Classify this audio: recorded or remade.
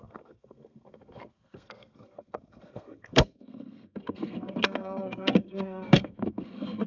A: remade